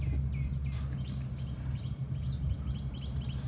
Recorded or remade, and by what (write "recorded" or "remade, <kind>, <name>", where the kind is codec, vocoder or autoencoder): recorded